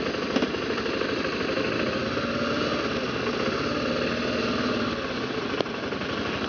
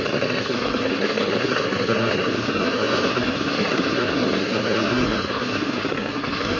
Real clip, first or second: first